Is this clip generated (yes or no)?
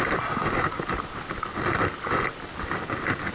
no